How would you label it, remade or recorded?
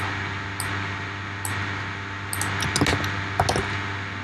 recorded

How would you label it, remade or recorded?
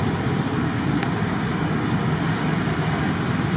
recorded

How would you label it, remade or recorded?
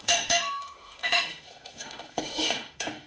remade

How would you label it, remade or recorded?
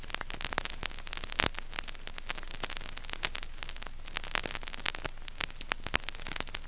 recorded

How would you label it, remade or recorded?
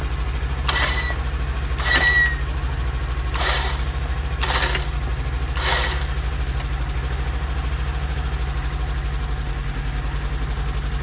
recorded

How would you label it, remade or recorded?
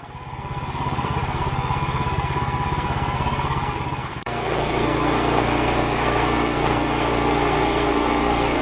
remade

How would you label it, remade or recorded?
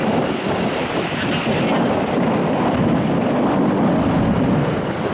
recorded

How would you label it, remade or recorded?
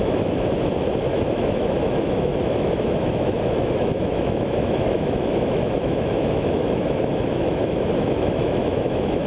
remade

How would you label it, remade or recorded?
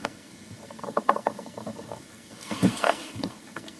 remade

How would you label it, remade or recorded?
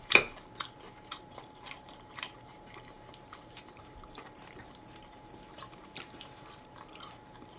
remade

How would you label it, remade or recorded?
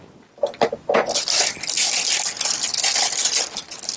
recorded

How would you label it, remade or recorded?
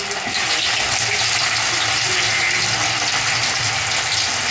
recorded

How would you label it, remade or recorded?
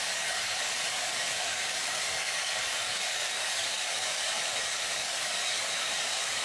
remade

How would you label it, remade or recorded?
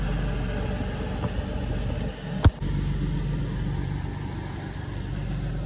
recorded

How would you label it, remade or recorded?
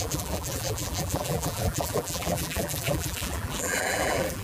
remade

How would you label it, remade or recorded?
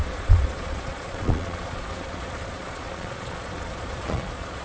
remade